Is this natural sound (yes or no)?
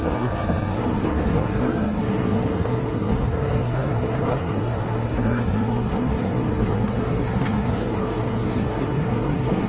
no